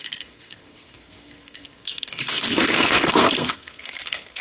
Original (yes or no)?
no